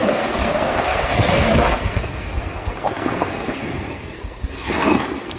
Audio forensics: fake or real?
fake